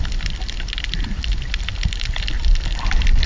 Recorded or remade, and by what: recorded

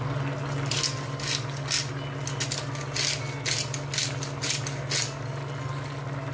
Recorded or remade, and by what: recorded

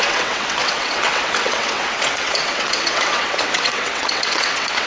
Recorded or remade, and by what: remade, vocoder, WaveNeXt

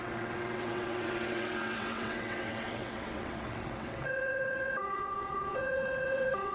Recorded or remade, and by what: remade, vocoder, WaveNeXt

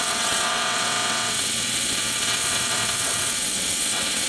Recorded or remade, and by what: remade, vocoder, WaveNeXt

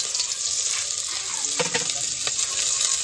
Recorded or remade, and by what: recorded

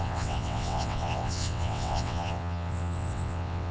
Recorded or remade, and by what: remade, vocoder, WaveNeXt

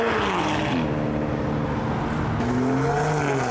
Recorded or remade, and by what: recorded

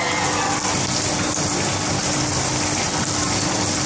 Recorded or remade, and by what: recorded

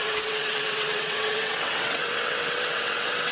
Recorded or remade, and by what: remade, vocoder, WaveNeXt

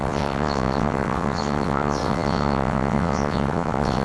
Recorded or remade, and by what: remade, vocoder, WaveNeXt